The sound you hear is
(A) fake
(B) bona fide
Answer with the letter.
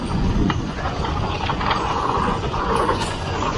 A